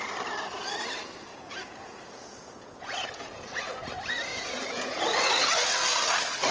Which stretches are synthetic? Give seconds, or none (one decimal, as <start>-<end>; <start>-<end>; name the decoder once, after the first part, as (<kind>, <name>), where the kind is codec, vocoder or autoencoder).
1.3-3.9 (vocoder, Vocos); 4.3-5.0